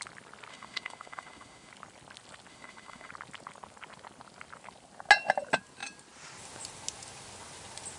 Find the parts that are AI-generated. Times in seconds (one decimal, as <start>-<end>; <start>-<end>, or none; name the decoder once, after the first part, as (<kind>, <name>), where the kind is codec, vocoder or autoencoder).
0.5-1.7 (autoencoder, DAC-VAE); 2.5-3.1